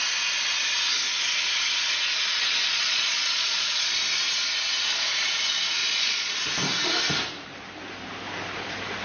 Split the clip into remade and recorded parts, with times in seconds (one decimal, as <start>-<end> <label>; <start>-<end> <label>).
0.0-2.7 recorded; 2.7-3.9 remade; 3.9-5.8 recorded; 5.8-6.4 remade; 6.4-9.0 recorded